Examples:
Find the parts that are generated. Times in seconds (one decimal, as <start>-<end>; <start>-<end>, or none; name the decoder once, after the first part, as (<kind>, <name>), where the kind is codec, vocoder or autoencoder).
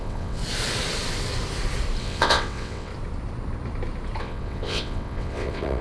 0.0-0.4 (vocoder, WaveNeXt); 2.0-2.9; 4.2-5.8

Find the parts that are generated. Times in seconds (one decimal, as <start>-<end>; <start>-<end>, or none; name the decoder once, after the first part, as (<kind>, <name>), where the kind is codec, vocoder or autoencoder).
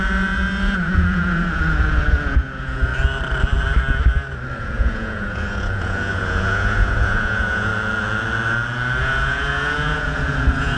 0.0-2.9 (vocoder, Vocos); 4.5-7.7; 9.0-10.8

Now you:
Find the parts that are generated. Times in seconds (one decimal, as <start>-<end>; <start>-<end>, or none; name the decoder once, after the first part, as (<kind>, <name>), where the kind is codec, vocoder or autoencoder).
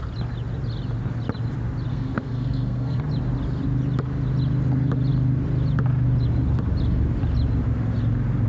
1.9-3.0 (codec, SNAC)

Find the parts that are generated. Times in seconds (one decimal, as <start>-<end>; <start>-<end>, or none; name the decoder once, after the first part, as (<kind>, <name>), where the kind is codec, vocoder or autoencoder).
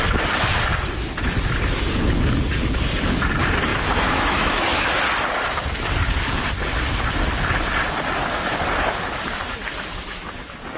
3.7-4.5 (autoencoder, DAC-VAE)